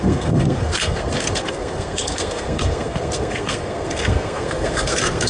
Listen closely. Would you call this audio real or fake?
fake